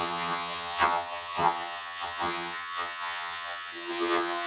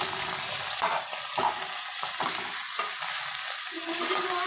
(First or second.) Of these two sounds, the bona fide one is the second